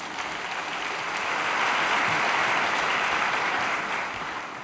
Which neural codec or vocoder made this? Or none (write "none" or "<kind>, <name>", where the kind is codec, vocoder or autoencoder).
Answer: none